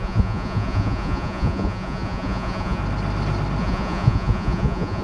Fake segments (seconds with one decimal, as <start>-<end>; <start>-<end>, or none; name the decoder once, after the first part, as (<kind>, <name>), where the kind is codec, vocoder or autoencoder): 0.0-2.8 (vocoder, Vocos); 3.6-5.0